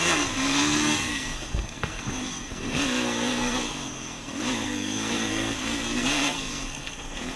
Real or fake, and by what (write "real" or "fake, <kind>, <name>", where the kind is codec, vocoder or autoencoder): fake, codec, SNAC